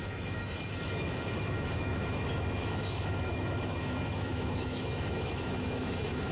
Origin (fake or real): fake